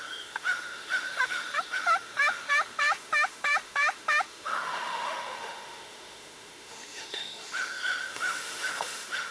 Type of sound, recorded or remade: remade